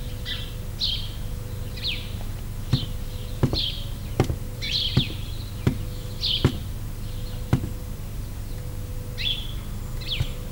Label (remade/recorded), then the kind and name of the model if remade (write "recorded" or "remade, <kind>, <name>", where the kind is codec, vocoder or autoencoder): recorded